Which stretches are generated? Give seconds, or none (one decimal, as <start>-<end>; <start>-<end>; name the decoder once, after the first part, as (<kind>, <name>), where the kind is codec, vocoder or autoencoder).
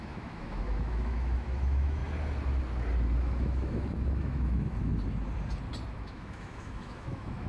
0.0-2.0 (autoencoder, DAC-VAE); 3.2-4.9; 5.9-7.5